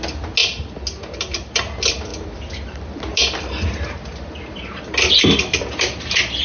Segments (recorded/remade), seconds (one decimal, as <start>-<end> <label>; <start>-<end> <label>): 0.0-6.4 recorded